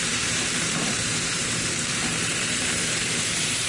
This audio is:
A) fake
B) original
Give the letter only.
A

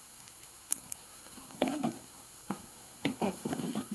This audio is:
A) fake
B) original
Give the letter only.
A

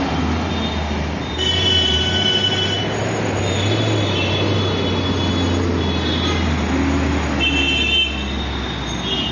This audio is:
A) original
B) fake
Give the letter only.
A